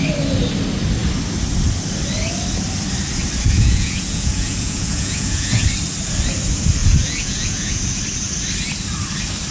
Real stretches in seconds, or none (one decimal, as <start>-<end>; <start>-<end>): 0.0-3.4; 5.6-6.8; 8.0-9.5